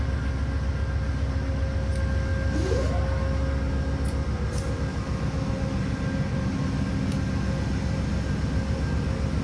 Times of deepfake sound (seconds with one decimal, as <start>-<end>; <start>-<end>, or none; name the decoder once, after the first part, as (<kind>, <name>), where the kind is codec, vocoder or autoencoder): 4.9-5.5 (autoencoder, DAC-VAE)